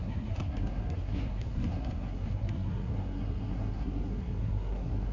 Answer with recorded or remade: remade